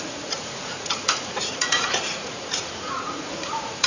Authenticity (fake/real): fake